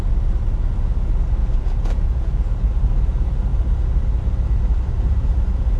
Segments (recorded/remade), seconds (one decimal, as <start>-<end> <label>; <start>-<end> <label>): 0.0-1.4 recorded; 1.4-2.8 remade; 2.8-5.8 recorded